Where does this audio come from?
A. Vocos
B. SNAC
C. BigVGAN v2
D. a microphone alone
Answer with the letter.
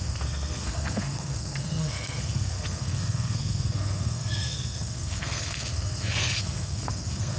B